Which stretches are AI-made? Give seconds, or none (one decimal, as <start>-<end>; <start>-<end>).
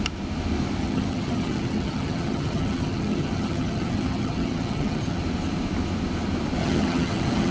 0.8-5.2; 6.6-7.5